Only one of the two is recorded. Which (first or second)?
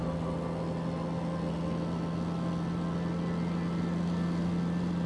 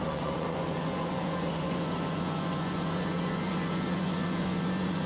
first